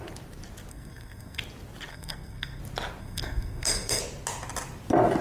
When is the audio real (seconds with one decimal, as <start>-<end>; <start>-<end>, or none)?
0.0-0.7; 1.4-1.9; 2.6-3.0; 4.0-5.2